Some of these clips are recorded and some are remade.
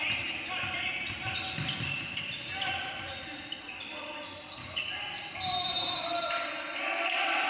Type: recorded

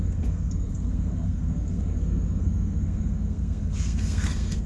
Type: remade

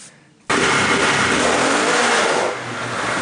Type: recorded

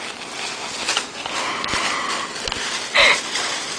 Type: recorded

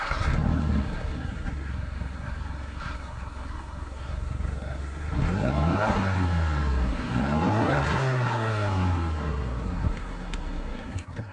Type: remade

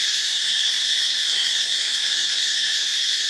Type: remade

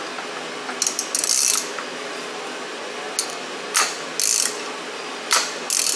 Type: recorded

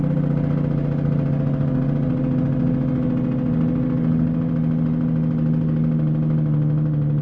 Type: recorded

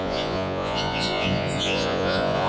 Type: remade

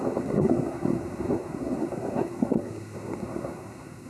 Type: remade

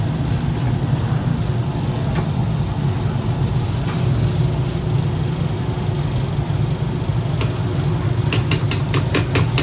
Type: recorded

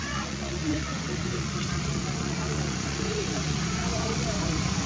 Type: remade